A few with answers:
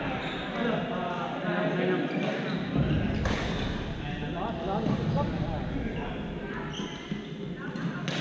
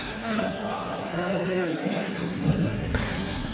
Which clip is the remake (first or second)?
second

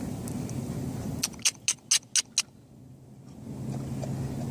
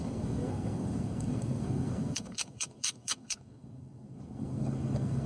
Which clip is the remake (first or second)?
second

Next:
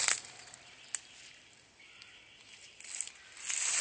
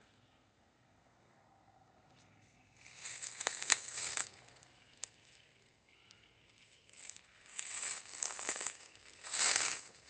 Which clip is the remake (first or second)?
second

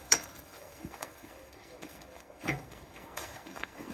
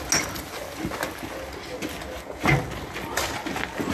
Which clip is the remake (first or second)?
first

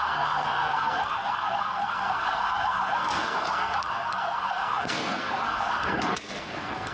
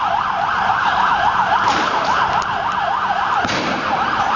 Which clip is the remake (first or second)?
first